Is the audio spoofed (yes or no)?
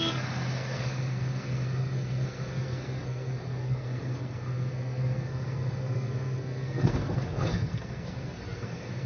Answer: yes